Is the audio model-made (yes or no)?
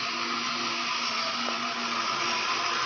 no